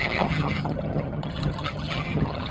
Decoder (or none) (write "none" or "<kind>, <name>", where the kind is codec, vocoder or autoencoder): vocoder, HiFi-GAN